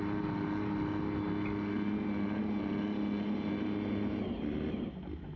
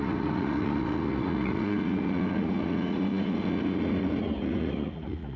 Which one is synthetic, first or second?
second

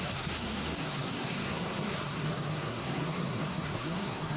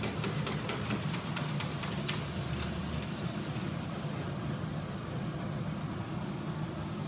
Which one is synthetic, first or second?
first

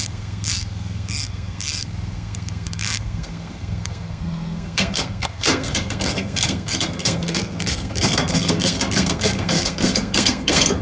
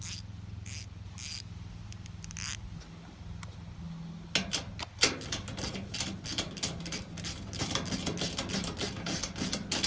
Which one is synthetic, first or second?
first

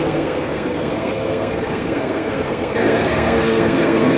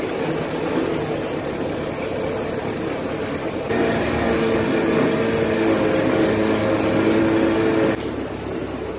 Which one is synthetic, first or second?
first